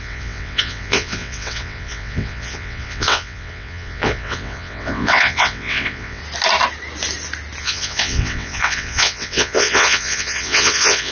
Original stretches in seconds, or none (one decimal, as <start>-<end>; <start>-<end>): 6.2-7.6